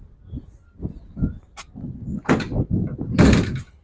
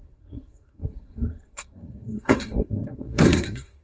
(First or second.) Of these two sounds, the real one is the first